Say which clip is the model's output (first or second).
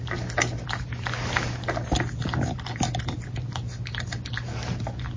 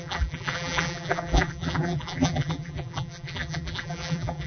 second